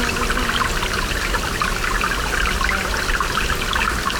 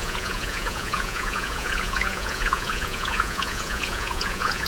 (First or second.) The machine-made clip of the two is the second